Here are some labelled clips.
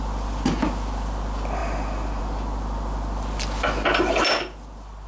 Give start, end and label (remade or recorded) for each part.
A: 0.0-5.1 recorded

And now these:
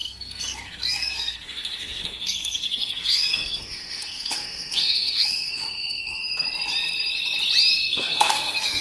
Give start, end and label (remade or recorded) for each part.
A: 0.0-6.2 remade; 6.2-7.7 recorded; 7.7-8.8 remade